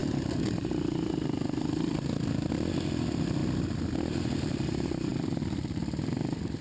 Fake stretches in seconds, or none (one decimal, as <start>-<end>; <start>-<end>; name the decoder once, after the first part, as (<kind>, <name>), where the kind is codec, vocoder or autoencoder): 2.7-3.4 (vocoder, BigVGAN v2); 4.0-6.6